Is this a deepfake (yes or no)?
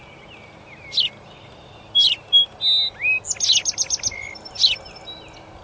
no